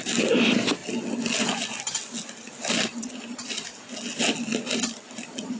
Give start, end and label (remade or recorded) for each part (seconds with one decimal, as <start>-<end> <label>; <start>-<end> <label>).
0.0-5.6 recorded